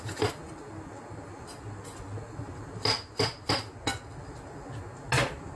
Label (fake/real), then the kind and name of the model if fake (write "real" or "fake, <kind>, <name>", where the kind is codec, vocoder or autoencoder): real